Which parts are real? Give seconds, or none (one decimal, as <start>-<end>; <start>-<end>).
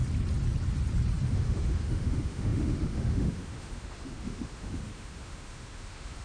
0.0-1.3